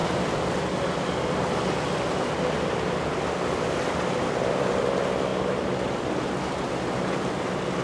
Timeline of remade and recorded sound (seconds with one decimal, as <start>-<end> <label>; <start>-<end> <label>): 0.0-7.8 recorded